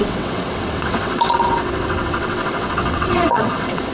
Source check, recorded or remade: remade